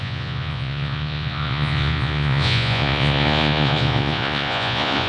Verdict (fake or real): fake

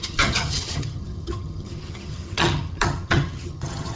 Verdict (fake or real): fake